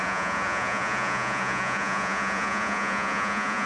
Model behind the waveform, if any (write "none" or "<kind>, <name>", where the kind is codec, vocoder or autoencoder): vocoder, Vocos